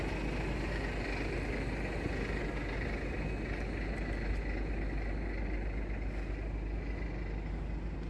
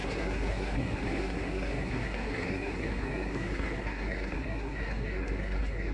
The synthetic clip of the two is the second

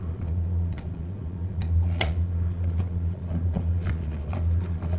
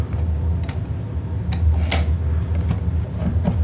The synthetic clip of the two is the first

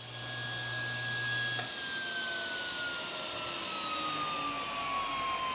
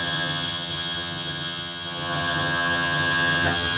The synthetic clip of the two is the second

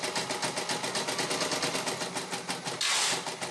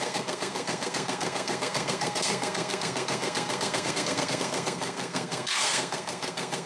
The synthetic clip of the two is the second